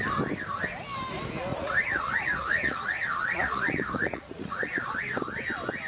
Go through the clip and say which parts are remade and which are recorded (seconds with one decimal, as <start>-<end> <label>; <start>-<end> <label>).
0.0-1.5 recorded; 1.5-5.0 remade; 5.0-5.9 recorded